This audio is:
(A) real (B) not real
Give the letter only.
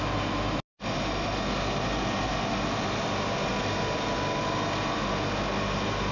A